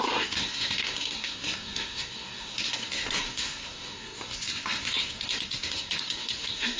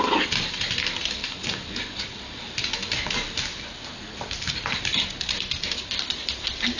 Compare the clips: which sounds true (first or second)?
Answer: second